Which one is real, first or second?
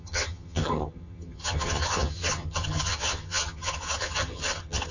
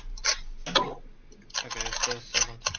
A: second